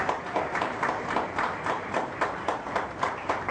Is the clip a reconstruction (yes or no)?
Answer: yes